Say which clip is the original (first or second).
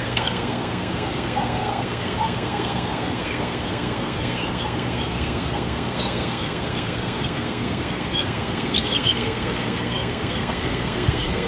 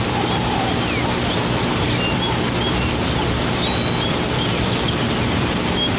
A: second